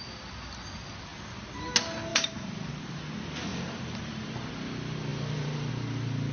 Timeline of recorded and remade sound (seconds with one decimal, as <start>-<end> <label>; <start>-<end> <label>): 0.0-2.1 recorded; 2.1-2.7 remade; 2.7-3.5 recorded; 3.5-4.5 remade; 4.5-5.1 recorded; 5.1-5.7 remade; 5.7-6.3 recorded